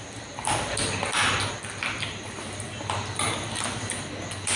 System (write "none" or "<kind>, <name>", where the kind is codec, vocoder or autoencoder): none